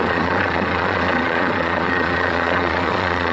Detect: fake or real fake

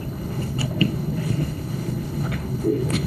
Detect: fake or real fake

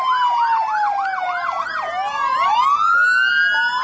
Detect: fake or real real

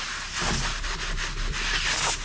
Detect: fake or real real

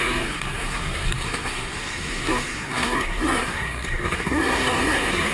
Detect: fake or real fake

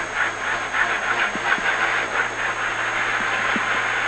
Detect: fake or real real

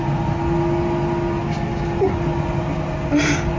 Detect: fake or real real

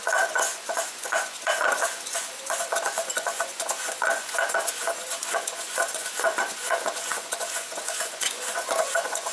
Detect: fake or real fake